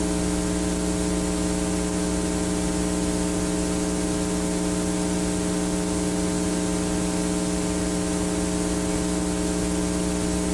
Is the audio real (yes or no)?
yes